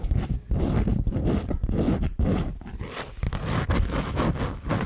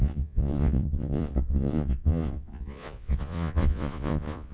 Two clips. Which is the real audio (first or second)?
first